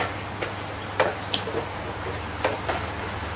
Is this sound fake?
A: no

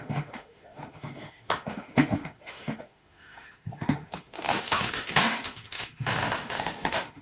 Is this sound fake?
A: yes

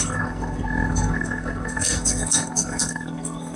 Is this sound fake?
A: yes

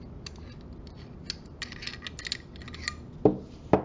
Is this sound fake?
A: no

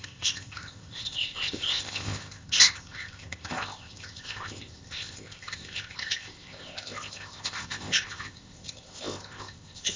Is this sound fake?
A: yes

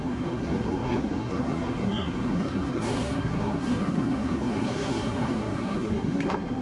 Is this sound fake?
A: yes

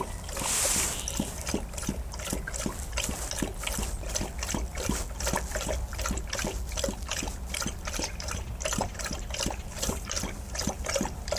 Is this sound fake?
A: no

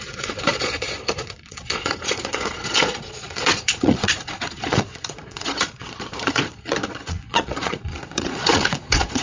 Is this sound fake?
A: yes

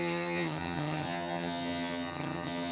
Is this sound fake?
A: yes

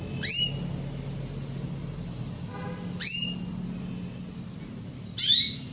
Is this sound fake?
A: no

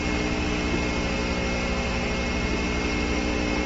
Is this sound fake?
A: no